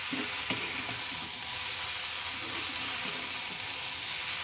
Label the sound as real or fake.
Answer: real